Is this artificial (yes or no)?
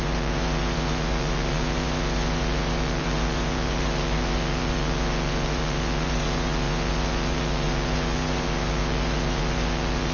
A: yes